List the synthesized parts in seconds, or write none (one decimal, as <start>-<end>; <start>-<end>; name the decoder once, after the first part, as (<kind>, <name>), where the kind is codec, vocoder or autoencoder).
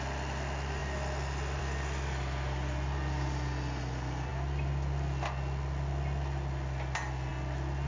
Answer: none